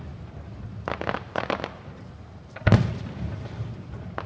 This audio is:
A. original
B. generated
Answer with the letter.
A